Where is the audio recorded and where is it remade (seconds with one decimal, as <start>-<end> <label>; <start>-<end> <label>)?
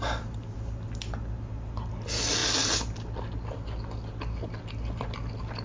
0.0-5.6 recorded